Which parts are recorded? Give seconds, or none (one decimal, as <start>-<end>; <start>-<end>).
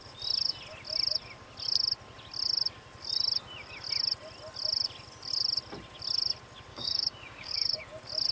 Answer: 0.0-6.7; 7.8-8.3